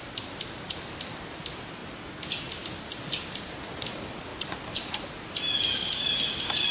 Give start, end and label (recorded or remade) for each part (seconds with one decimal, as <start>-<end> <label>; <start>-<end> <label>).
0.0-6.7 recorded